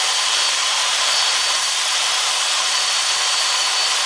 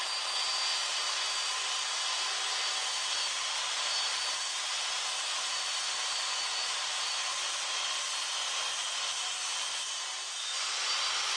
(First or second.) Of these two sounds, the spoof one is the first